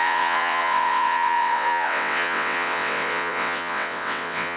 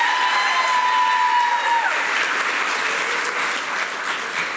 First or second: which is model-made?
first